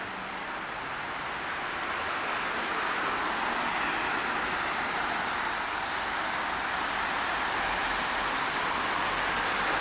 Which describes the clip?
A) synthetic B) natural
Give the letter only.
B